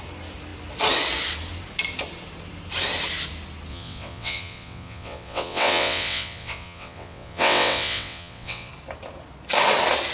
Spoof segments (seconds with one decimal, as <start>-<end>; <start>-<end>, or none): 3.7-8.7